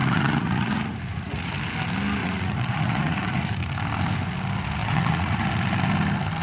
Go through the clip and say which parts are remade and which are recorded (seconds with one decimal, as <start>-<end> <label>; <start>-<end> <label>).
0.0-1.5 remade; 1.5-2.2 recorded; 2.2-3.5 remade; 3.5-4.8 recorded; 4.8-5.5 remade; 5.5-6.4 recorded